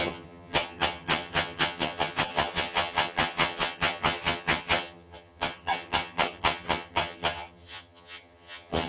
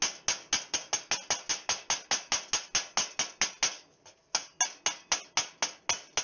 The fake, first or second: first